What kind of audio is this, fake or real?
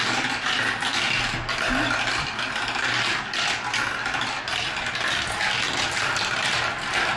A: real